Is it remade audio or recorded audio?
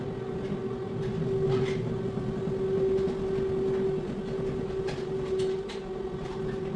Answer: recorded